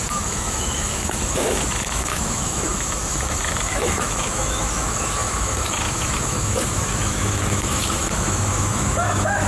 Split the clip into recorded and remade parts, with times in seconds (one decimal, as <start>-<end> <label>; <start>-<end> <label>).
0.0-9.5 remade